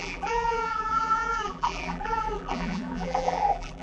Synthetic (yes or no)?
yes